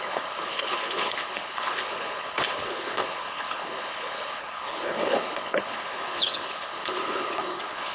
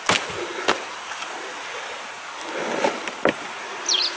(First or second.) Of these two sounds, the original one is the second